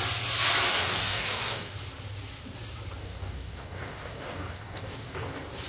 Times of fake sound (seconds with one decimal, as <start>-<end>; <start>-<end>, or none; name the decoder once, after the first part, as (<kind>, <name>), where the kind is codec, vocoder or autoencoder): 0.7-1.7 (codec, DAC); 3.0-5.3